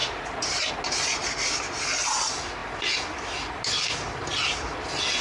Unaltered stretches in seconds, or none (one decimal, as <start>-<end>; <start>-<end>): 0.7-1.2; 1.8-5.2